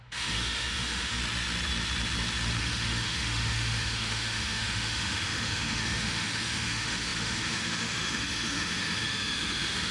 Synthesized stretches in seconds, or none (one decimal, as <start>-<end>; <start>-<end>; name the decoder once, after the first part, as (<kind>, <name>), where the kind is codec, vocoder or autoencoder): 0.0-1.2 (autoencoder, DAC-VAE); 2.6-9.9